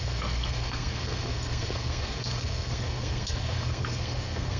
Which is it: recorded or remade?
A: remade